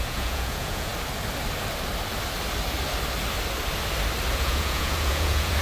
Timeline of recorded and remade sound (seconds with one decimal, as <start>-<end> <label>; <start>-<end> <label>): 0.0-0.9 remade; 0.9-4.3 recorded; 4.3-5.6 remade